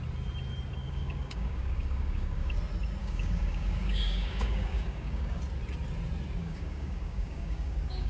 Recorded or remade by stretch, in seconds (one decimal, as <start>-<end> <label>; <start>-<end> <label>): 0.0-0.8 recorded; 0.8-2.6 remade; 2.6-3.0 recorded; 3.0-5.4 remade; 5.4-6.4 recorded; 6.4-8.1 remade

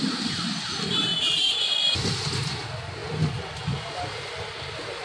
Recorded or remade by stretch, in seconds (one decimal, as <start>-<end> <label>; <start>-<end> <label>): 0.0-1.1 recorded; 1.1-1.6 remade; 1.6-5.0 recorded

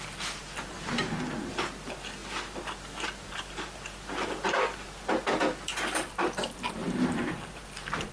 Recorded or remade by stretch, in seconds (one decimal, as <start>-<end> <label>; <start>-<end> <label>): 0.0-6.8 recorded; 6.8-7.6 remade; 7.6-8.1 recorded

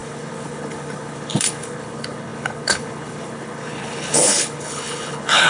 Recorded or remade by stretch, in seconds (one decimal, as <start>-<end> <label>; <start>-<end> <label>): 0.0-5.5 remade

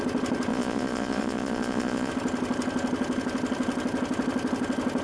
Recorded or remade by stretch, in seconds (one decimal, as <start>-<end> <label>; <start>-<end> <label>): 0.0-0.5 recorded; 0.5-2.1 remade; 2.1-5.0 recorded

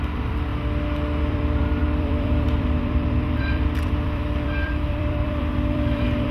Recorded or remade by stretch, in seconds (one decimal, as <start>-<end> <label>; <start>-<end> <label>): 0.0-0.5 remade; 0.5-1.2 recorded; 1.2-6.3 remade

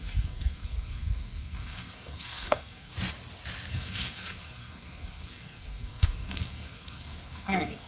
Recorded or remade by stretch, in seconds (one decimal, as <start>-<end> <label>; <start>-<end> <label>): 0.0-2.9 remade; 2.9-3.7 recorded; 3.7-7.9 remade

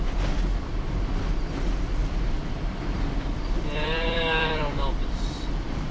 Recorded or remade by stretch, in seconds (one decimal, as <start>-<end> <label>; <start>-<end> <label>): 0.0-2.0 recorded; 2.0-5.5 remade; 5.5-5.9 recorded